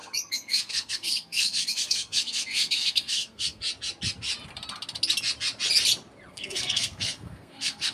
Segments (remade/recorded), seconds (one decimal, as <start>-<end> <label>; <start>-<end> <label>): 0.0-3.6 remade; 3.6-6.3 recorded; 6.3-7.9 remade